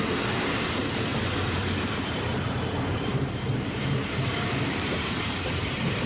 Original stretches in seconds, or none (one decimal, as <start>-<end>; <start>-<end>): none

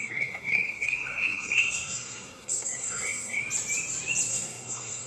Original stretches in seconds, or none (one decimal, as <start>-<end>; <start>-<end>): 3.4-4.3

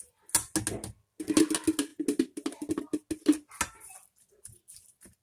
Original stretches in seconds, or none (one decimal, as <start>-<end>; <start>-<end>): 0.0-5.2